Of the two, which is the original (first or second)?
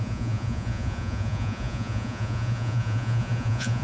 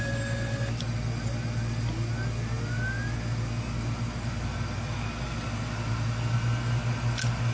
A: second